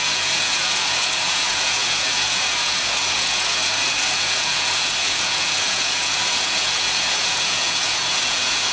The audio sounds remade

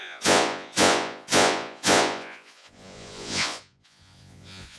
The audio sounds remade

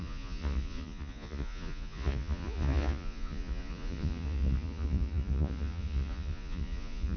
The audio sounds remade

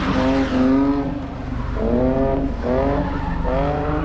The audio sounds recorded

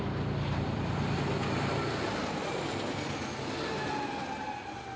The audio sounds recorded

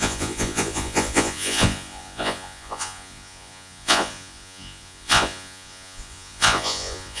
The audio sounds remade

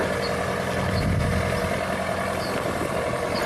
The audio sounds recorded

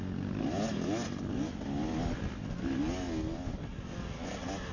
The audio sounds recorded